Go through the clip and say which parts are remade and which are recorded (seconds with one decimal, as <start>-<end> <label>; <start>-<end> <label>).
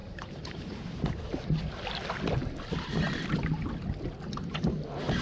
0.0-1.2 remade; 1.2-5.2 recorded